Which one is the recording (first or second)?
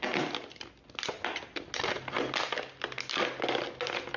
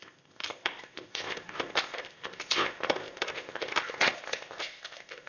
first